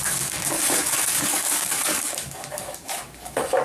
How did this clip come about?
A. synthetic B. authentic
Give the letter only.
A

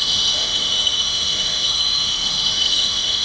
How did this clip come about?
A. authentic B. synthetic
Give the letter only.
B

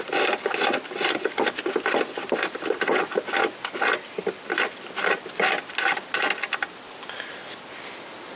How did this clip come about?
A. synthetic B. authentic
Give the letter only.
B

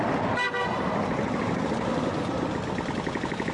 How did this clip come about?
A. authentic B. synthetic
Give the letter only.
A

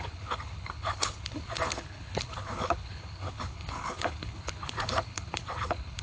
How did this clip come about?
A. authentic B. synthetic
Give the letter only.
B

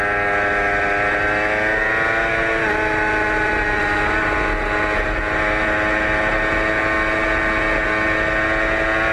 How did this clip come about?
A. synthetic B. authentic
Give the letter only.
B